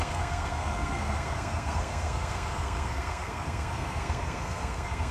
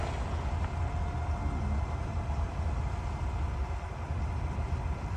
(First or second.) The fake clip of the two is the first